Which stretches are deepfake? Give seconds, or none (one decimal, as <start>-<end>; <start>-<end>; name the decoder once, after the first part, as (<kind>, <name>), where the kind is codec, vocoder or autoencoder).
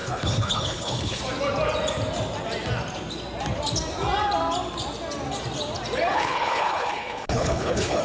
0.0-1.2 (codec, HILCodec); 6.1-8.0